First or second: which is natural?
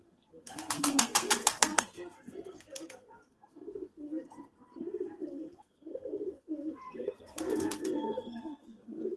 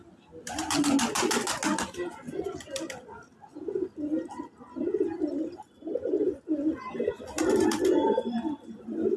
second